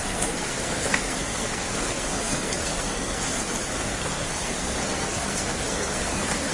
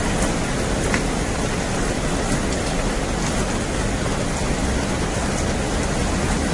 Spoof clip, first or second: first